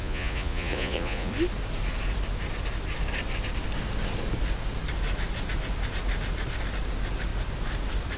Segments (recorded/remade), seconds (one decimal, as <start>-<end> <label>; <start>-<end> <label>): 0.0-1.3 remade; 1.3-8.2 recorded